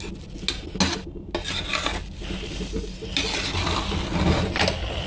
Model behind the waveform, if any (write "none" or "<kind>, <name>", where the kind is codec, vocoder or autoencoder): none